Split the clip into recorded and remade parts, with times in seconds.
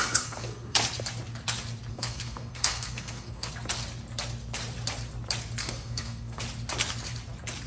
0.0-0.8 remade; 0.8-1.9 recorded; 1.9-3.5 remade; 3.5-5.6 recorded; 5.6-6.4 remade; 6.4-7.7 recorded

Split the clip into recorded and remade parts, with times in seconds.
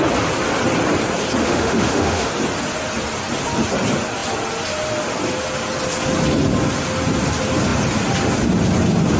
0.0-1.4 recorded; 1.4-2.3 remade; 2.3-9.2 recorded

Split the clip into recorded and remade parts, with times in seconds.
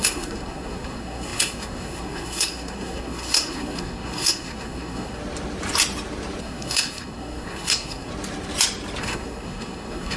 0.0-5.2 remade; 5.2-6.4 recorded; 6.4-8.1 remade; 8.1-9.0 recorded; 9.0-10.2 remade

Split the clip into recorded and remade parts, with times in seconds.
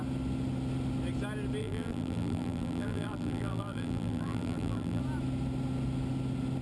0.0-1.6 recorded; 1.6-5.0 remade; 5.0-6.6 recorded